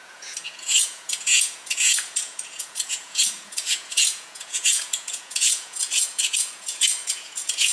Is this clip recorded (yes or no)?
no